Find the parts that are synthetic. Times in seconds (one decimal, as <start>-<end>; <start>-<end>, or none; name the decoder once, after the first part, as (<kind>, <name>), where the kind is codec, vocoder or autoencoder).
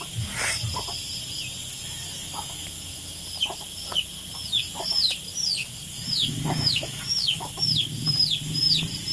1.7-3.2 (autoencoder, DAC-VAE); 5.6-7.6